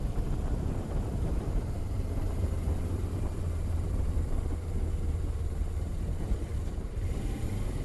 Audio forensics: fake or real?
fake